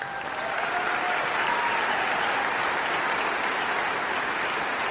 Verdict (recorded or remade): recorded